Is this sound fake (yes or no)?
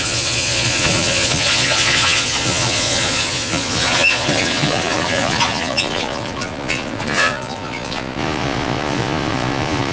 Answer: yes